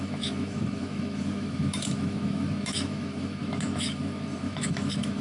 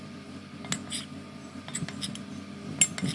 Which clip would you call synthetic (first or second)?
first